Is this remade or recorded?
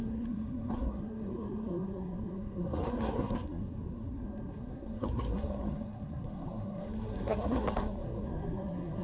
remade